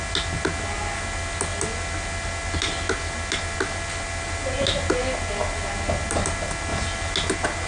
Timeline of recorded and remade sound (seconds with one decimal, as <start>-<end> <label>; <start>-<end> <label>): 0.0-7.7 recorded